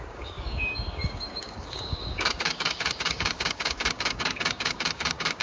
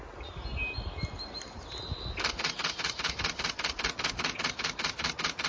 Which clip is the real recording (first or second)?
second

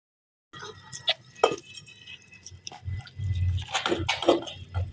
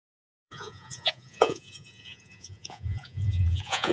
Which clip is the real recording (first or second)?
first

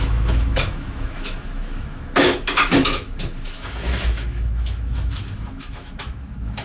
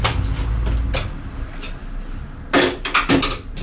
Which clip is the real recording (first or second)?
second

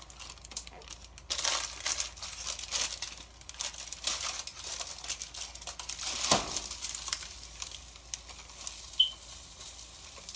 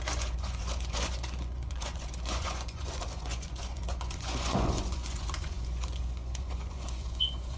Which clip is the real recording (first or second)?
first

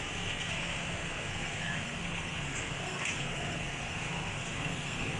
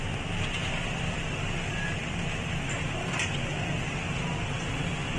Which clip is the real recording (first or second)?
second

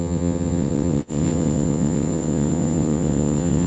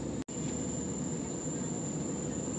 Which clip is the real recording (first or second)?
second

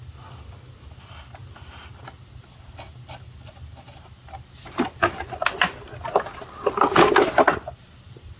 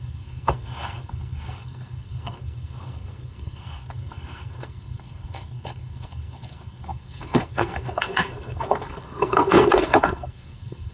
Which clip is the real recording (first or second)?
first